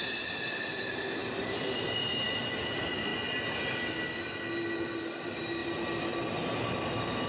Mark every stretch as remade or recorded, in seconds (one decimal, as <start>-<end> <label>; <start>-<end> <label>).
0.0-3.1 remade; 3.1-4.9 recorded; 4.9-7.3 remade